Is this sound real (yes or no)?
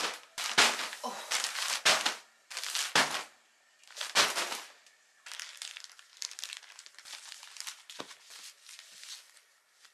yes